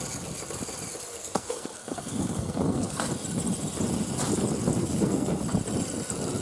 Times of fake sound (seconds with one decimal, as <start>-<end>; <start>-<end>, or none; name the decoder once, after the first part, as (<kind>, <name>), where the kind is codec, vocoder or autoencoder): 1.1-3.1 (codec, SNAC); 4.8-5.4